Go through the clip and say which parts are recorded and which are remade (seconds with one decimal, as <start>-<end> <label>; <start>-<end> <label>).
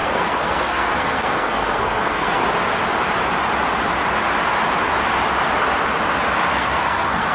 0.0-2.4 remade; 2.4-6.5 recorded; 6.5-7.3 remade